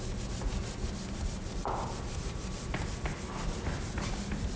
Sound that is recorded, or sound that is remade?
recorded